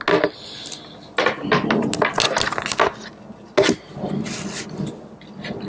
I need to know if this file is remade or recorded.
recorded